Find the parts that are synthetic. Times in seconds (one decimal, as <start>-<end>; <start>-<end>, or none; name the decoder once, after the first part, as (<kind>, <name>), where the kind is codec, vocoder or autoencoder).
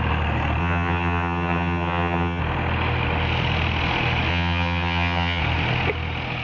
0.6-2.4 (vocoder, HiFi-GAN); 4.3-5.4